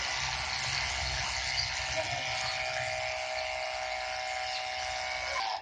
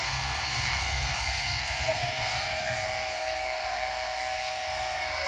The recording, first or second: first